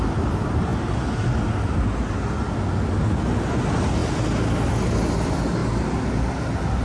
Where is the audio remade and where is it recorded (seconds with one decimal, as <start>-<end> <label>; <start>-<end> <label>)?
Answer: 0.0-6.8 recorded